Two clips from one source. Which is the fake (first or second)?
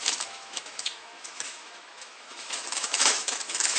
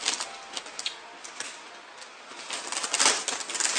first